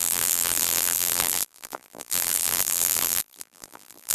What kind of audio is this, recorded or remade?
remade